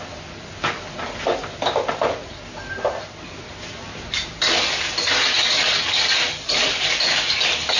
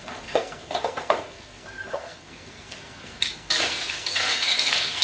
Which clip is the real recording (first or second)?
first